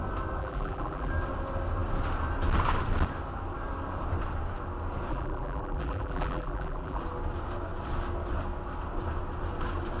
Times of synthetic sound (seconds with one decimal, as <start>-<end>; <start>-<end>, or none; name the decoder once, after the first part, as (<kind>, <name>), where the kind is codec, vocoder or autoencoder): 0.4-1.1 (vocoder, BigVGAN v2); 5.1-7.0